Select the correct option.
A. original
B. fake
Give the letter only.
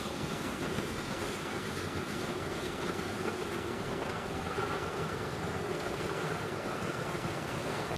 B